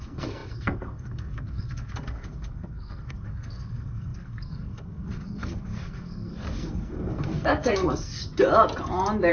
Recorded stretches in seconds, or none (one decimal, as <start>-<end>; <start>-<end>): 8.2-9.3